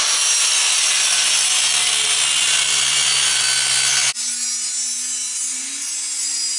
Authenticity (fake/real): real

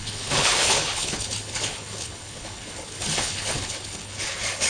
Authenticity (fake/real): fake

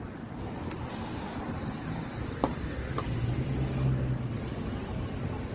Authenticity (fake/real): real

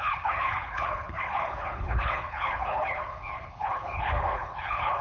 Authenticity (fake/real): fake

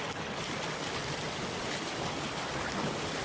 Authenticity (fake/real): real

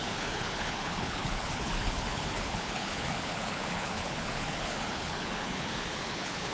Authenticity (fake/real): fake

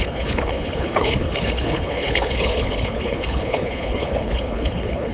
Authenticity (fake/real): fake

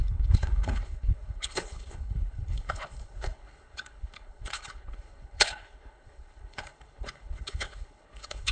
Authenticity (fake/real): fake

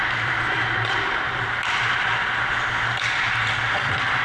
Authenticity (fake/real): real